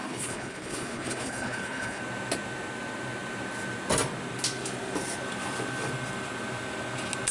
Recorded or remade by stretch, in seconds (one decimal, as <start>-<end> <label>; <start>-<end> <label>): 0.0-2.0 remade; 2.0-7.3 recorded